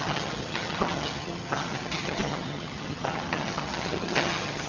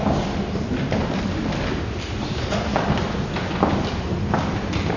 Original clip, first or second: second